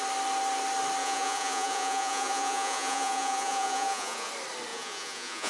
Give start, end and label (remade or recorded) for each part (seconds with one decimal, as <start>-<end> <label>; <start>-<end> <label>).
0.0-1.0 recorded; 1.0-4.3 remade; 4.3-4.7 recorded; 4.7-5.5 remade